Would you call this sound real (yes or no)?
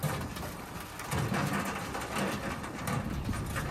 yes